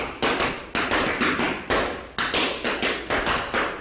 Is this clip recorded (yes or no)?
yes